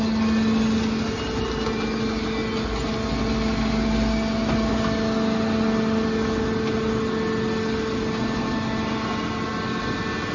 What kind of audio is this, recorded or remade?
recorded